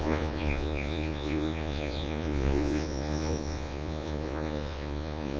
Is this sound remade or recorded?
remade